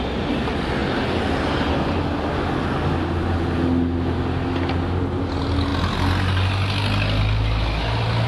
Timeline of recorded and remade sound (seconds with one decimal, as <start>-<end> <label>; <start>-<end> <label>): 0.0-8.3 recorded